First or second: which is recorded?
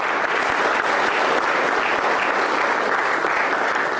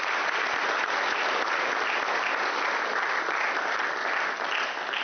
first